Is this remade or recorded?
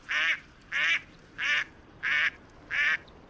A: recorded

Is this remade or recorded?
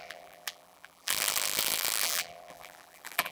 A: remade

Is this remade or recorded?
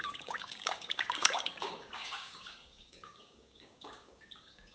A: remade